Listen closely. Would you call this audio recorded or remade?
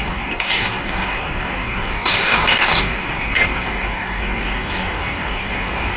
remade